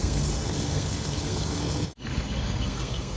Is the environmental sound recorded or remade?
remade